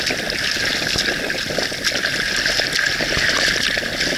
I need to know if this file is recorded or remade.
recorded